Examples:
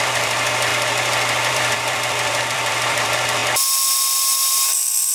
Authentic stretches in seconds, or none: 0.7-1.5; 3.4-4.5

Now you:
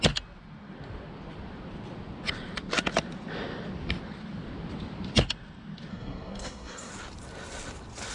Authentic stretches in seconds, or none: 0.0-5.9; 6.9-8.1